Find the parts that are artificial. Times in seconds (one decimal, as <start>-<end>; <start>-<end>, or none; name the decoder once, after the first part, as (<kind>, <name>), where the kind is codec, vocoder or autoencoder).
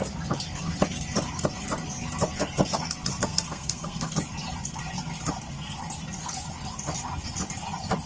3.2-4.1 (codec, SNAC)